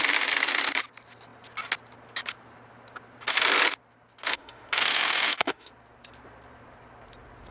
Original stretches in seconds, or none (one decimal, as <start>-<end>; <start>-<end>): 0.0-4.3; 5.7-7.5